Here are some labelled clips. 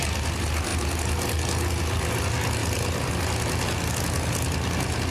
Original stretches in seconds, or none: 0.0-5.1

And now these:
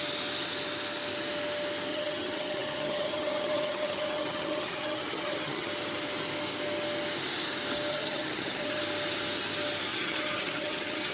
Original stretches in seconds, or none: 0.0-1.9; 5.7-7.9; 8.8-9.9

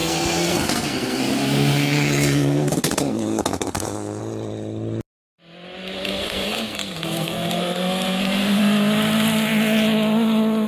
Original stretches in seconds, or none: 4.2-5.8; 8.6-10.7

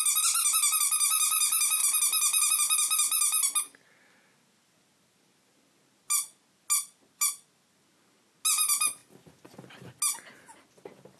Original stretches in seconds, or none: 0.0-11.2

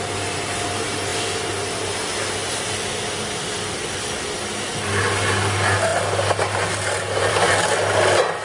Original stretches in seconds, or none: 0.0-8.4

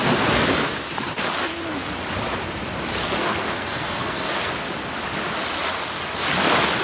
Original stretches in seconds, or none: 0.0-3.0; 4.5-6.8

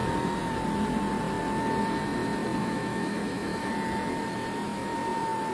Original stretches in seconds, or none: 0.0-2.6; 3.7-5.5

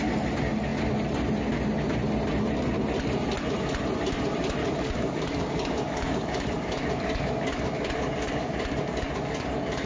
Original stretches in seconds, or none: 0.0-4.6